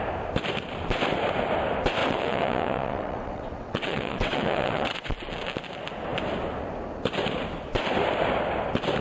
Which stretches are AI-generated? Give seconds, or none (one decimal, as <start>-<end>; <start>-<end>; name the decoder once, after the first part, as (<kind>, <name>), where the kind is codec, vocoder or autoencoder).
2.0-5.1 (vocoder, WaveNeXt)